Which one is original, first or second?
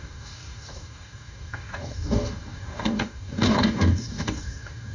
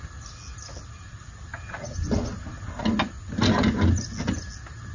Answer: second